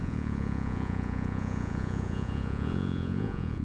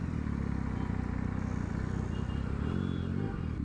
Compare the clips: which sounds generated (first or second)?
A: first